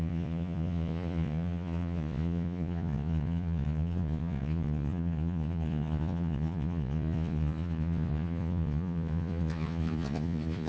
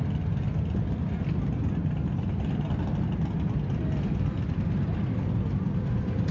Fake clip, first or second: first